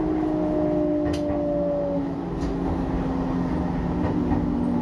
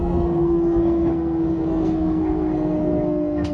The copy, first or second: second